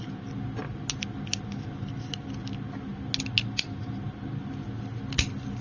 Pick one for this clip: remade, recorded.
recorded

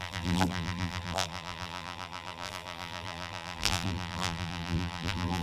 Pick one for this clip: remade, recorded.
remade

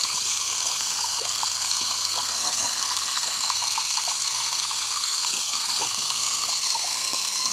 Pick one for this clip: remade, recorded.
remade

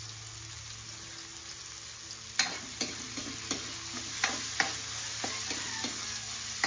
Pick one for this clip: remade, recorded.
recorded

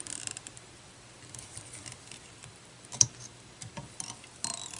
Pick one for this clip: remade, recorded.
recorded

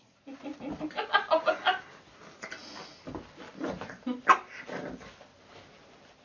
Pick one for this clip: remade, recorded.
recorded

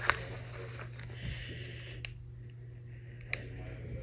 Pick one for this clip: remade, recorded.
recorded